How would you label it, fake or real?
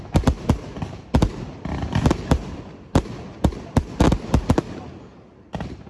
real